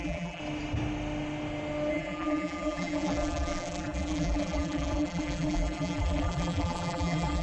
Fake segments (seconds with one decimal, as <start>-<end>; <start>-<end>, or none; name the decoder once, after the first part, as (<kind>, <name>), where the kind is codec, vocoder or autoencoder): 0.0-0.4 (vocoder, BigVGAN v2); 1.9-7.4